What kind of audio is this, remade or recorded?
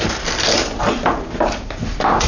recorded